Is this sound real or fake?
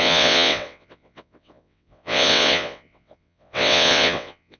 fake